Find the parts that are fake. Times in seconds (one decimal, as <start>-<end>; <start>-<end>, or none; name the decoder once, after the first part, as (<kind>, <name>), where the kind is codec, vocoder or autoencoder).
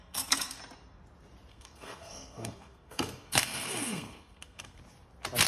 0.0-0.6 (codec, SNAC); 1.5-4.8